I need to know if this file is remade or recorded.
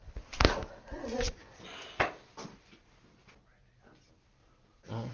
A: recorded